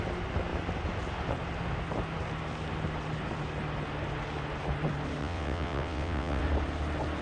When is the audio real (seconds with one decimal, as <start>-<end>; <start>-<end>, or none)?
0.0-5.2; 6.4-7.2